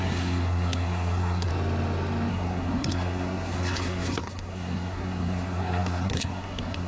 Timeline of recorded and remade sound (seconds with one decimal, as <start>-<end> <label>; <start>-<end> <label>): 0.0-1.5 remade; 1.5-2.3 recorded; 2.3-6.9 remade